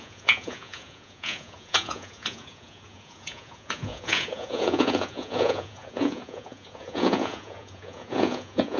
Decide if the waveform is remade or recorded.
remade